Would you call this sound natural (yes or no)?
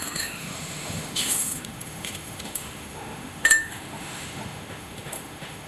no